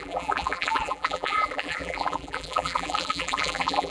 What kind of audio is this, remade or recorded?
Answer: remade